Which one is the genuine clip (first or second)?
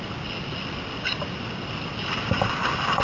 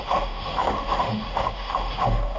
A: first